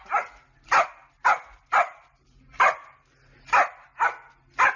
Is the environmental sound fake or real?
real